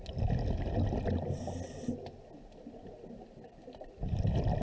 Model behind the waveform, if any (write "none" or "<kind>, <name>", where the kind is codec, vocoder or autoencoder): none